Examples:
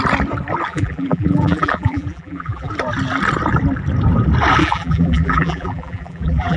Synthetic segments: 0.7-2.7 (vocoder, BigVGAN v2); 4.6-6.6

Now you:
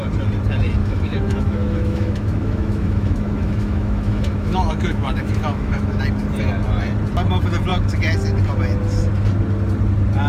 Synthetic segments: 0.8-6.0 (autoencoder, DAC-VAE)

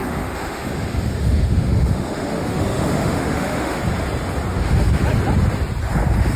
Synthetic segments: 0.0-3.8 (autoencoder, DAC-VAE); 4.5-5.0